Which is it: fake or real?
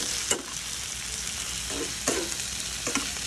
real